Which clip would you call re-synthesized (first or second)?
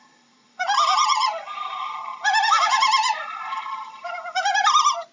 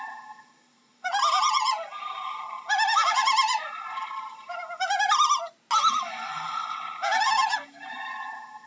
first